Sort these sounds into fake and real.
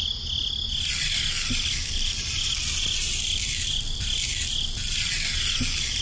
real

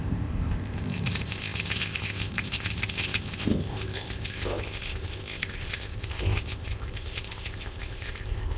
fake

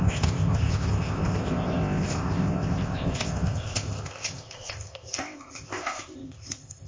fake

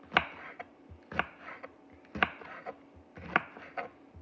real